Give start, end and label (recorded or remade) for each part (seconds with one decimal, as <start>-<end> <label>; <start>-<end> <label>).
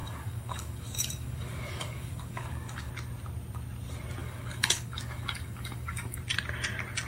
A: 0.0-2.9 remade; 2.9-4.2 recorded; 4.2-6.2 remade; 6.2-7.1 recorded